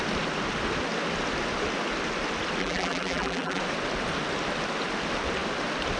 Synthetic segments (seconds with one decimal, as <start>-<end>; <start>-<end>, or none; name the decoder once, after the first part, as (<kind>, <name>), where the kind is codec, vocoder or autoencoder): 2.6-3.6 (vocoder, BigVGAN v2)